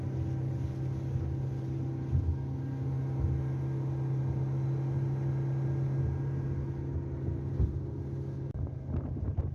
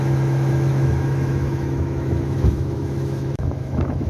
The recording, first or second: first